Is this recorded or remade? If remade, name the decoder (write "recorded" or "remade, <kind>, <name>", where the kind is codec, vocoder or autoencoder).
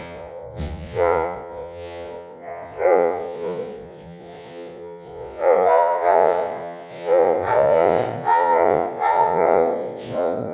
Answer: remade, vocoder, Vocos